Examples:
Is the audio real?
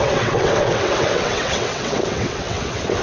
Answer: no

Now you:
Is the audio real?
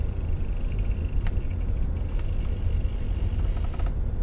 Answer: yes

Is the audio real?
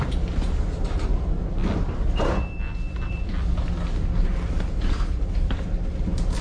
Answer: yes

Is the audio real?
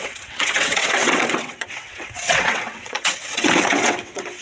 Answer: no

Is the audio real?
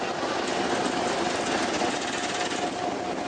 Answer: yes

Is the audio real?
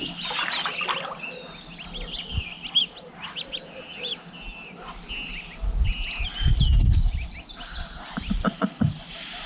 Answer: yes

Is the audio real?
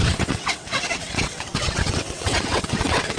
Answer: no